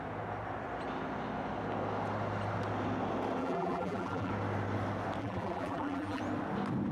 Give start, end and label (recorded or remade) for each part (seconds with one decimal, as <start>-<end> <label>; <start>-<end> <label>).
0.0-3.4 recorded; 3.4-4.3 remade; 4.3-5.2 recorded; 5.2-6.2 remade; 6.2-6.9 recorded